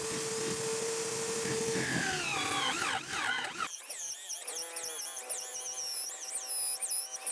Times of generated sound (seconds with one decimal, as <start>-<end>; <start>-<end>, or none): none